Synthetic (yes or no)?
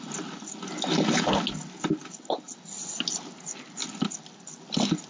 no